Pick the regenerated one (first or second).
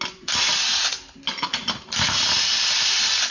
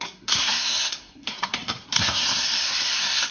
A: second